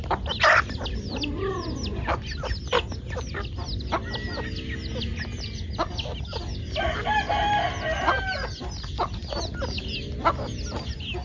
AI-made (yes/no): no